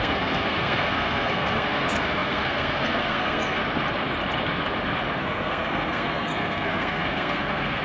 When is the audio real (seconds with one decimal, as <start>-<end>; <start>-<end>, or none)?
3.6-5.2